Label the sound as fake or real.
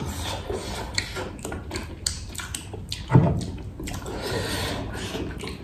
real